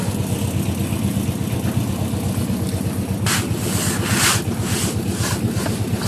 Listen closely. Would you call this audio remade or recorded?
recorded